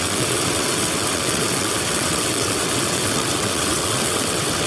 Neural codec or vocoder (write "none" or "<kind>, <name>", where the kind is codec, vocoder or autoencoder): vocoder, WaveNeXt